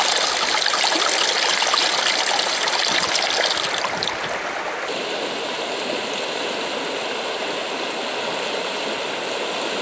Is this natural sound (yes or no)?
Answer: yes